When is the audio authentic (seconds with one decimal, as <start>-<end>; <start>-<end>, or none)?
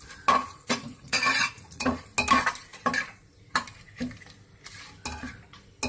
0.0-0.4; 2.0-5.9